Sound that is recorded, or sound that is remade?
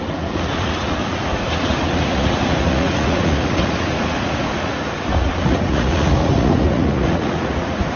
remade